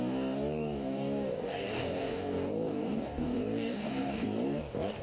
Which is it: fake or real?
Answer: fake